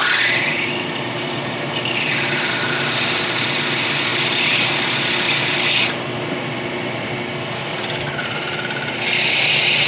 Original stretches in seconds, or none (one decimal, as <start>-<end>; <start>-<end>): 0.0-9.9